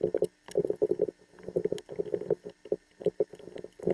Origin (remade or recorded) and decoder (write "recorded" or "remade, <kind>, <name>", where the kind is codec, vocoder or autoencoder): recorded